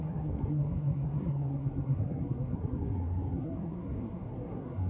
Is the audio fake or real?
fake